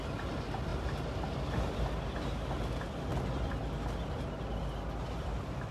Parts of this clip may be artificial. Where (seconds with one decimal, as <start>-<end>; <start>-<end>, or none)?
none